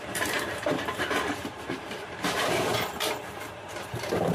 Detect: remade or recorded remade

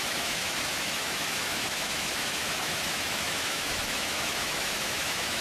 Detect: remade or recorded remade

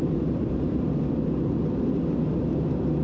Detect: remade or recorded recorded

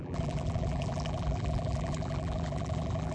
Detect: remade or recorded remade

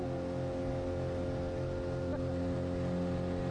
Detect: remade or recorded recorded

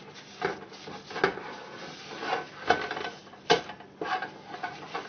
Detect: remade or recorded recorded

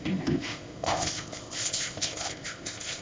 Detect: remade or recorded remade